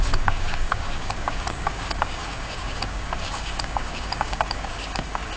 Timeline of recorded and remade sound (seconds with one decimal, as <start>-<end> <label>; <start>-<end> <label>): 0.0-5.4 remade